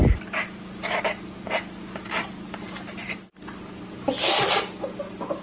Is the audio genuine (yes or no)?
yes